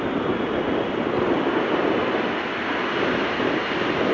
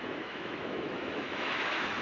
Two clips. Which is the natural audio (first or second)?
first